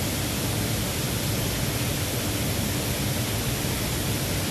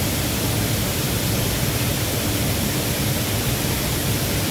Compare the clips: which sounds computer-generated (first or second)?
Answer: second